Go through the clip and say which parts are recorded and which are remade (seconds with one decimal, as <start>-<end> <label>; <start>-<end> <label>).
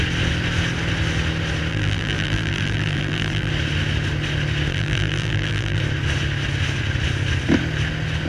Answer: 0.0-1.7 recorded; 1.7-3.5 remade; 3.5-4.7 recorded; 4.7-5.8 remade; 5.8-8.3 recorded